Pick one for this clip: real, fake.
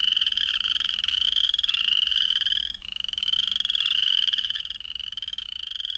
fake